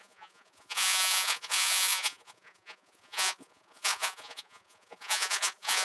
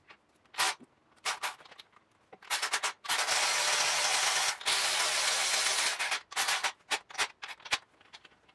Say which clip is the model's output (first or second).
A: first